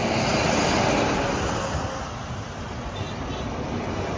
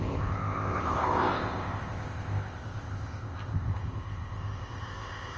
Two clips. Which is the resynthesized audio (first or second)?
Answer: second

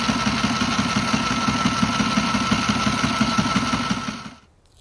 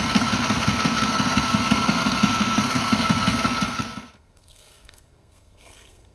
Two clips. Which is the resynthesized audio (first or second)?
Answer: second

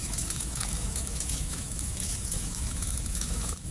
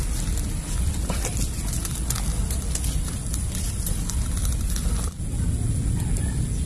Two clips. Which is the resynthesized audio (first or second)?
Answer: first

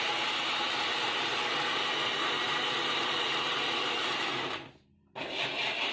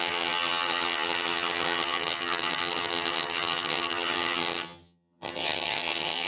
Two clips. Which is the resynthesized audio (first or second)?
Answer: second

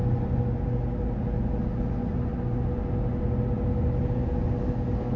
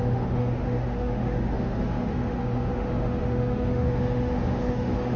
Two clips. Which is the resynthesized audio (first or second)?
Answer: second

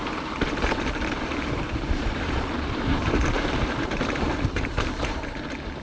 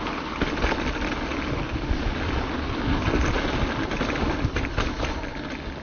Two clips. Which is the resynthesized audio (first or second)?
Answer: first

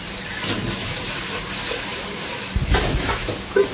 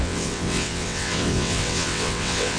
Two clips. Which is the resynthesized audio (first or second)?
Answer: second